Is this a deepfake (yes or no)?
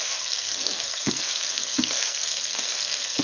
yes